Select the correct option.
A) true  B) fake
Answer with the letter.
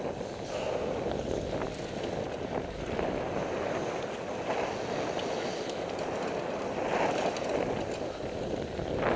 A